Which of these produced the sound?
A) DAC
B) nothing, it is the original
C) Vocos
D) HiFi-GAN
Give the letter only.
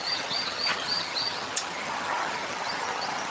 D